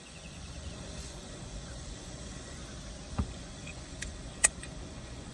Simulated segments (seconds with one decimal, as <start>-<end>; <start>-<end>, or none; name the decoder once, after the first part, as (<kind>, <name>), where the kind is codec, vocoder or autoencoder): 0.0-2.6 (vocoder, Vocos); 3.1-5.3